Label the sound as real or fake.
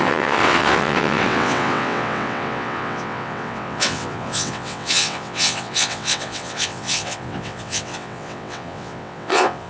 fake